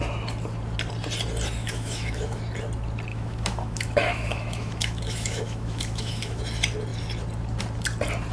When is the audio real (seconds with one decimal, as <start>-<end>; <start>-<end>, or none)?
0.0-1.6; 2.4-3.1; 6.4-8.3